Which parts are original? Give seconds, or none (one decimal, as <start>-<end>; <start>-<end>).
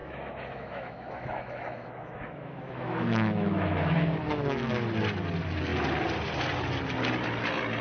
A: 4.7-7.8